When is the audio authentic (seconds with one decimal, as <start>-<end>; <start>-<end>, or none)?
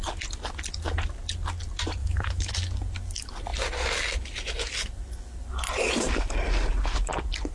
0.0-2.0; 2.5-7.5